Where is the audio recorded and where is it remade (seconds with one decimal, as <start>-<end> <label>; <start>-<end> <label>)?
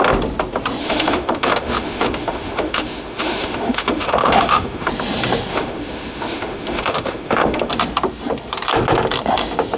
0.0-0.8 recorded; 0.8-4.9 remade; 4.9-5.5 recorded; 5.5-7.7 remade; 7.7-9.8 recorded